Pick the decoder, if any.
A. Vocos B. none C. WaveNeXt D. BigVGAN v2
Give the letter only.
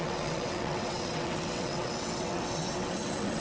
C